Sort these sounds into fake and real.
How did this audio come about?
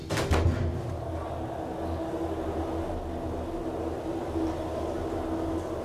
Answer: real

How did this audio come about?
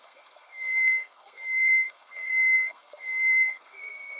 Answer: fake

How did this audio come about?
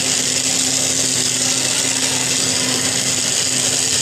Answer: real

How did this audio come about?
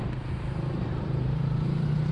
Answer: fake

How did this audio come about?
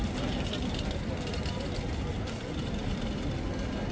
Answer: real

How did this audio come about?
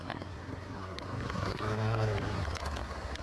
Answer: fake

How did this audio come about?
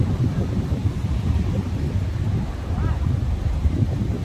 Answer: fake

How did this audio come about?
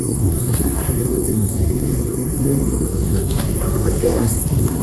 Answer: fake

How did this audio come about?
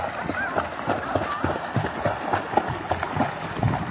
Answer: real